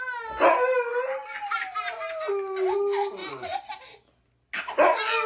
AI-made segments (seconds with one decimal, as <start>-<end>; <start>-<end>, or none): 0.9-2.3; 3.2-3.7